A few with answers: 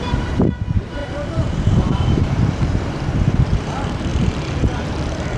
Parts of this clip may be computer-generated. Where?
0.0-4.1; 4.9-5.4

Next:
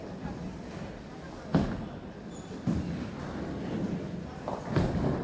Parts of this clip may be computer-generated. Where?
none